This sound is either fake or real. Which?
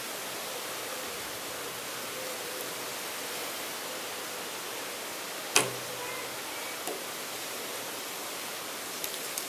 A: real